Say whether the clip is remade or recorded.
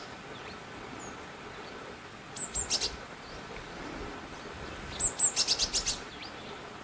recorded